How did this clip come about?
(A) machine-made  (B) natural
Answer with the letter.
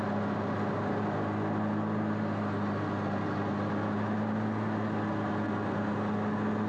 B